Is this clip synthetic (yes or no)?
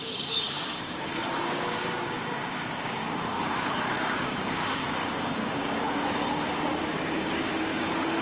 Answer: yes